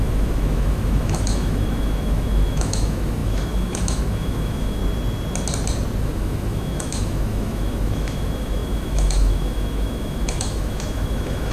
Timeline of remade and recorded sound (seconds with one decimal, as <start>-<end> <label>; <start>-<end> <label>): 0.0-4.8 remade; 4.8-6.0 recorded; 6.0-11.5 remade